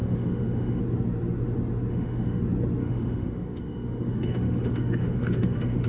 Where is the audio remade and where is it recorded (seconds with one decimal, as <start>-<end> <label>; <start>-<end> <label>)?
0.0-0.8 remade; 0.8-1.9 recorded; 1.9-2.4 remade; 2.4-2.8 recorded; 2.8-5.9 remade